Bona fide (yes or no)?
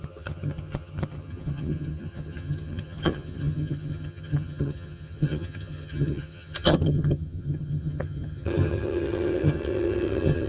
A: no